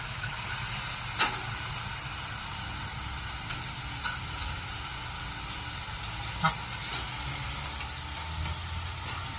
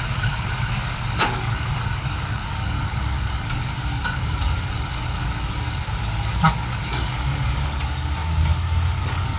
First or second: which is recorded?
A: first